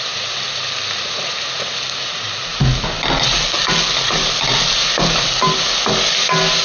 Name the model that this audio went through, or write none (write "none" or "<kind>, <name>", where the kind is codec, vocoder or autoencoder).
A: none